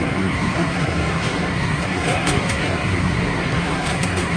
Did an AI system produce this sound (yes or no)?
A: yes